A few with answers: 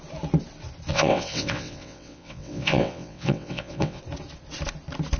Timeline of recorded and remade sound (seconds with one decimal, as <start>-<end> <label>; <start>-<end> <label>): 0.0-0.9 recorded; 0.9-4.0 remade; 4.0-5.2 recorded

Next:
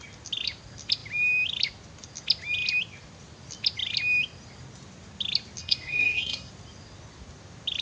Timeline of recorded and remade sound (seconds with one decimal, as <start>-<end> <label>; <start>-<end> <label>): 0.0-5.6 recorded; 5.6-6.5 remade; 6.5-7.8 recorded

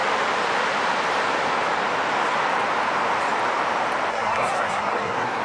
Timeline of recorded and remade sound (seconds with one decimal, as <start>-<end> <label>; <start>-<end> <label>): 0.0-4.1 recorded; 4.1-5.4 remade

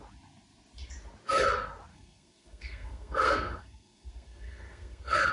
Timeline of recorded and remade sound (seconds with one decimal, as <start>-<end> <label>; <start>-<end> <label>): 0.0-1.9 recorded; 1.9-5.3 remade

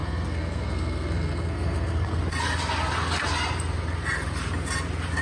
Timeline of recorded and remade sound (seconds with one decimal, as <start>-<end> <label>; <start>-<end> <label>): 0.0-2.2 remade; 2.2-5.2 recorded

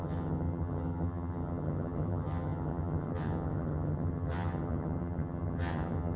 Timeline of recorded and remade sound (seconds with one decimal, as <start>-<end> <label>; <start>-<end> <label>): 0.0-6.2 remade

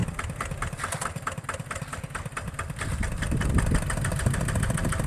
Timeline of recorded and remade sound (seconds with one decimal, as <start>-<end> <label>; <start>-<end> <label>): 0.0-5.1 recorded